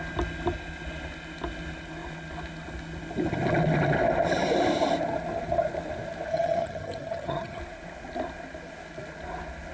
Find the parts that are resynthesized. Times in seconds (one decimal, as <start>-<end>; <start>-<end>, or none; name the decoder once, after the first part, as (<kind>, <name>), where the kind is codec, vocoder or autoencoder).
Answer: 6.3-7.6 (vocoder, HiFi-GAN)